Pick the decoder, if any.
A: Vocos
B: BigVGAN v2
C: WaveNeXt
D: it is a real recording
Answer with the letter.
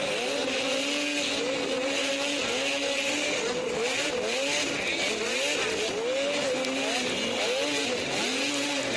D